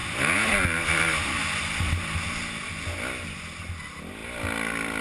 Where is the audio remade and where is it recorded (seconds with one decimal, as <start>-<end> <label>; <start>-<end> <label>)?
0.0-5.0 recorded